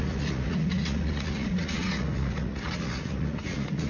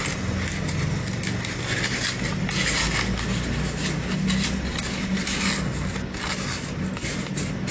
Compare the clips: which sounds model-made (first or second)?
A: first